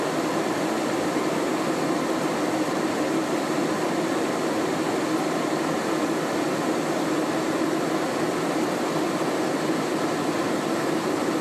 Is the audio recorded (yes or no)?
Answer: yes